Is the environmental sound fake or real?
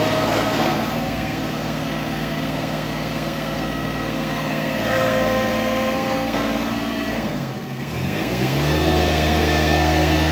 fake